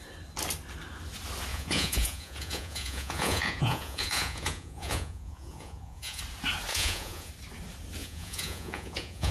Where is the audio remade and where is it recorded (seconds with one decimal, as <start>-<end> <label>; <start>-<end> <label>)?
0.0-1.5 recorded; 1.5-6.2 remade; 6.2-6.7 recorded; 6.7-7.3 remade; 7.3-8.0 recorded; 8.0-9.3 remade